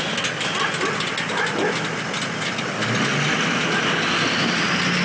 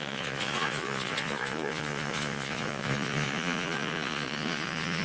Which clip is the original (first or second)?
first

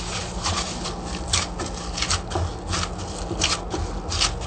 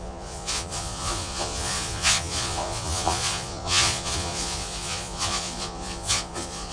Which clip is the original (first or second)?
first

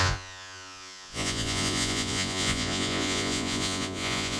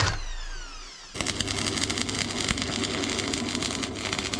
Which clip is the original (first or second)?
second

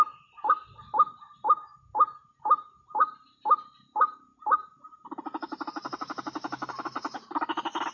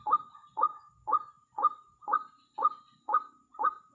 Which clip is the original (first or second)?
first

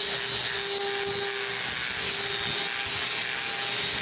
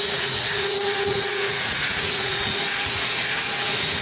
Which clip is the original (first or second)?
first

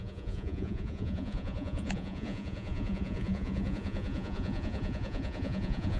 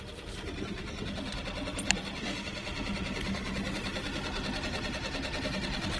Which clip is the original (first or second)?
second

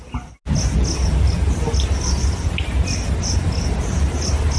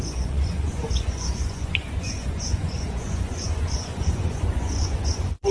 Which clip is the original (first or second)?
first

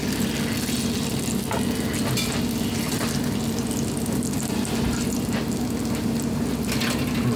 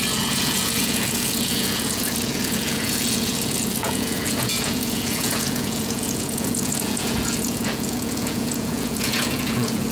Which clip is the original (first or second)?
first